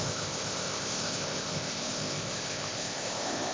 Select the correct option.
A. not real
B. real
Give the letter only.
A